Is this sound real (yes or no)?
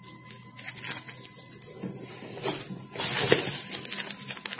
yes